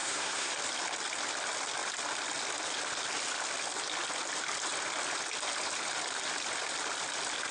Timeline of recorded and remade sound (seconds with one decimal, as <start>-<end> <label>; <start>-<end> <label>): 0.0-0.5 remade; 0.5-7.5 recorded

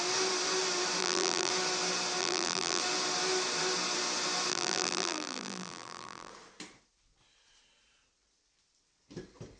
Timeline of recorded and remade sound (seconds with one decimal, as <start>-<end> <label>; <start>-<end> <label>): 0.0-1.0 recorded; 1.0-1.5 remade; 1.5-2.2 recorded; 2.2-2.8 remade; 2.8-4.5 recorded; 4.5-6.3 remade; 6.3-9.6 recorded